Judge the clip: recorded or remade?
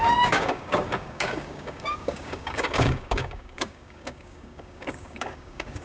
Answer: remade